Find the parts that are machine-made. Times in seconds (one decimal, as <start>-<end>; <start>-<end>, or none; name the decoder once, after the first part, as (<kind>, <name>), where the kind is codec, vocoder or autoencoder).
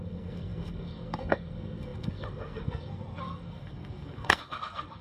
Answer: 0.0-5.0 (codec, SNAC)